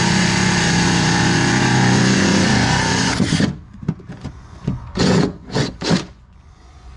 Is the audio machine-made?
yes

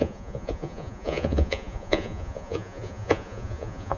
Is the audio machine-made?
yes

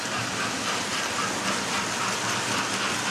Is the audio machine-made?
no